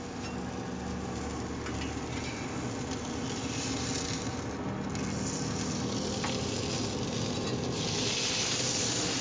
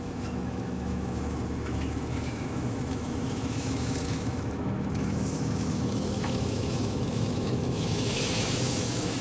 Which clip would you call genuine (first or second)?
first